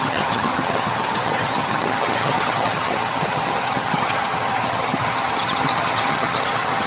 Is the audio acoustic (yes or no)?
no